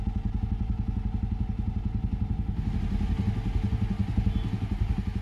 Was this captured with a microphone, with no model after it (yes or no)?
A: yes